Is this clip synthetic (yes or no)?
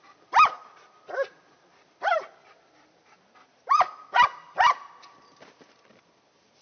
no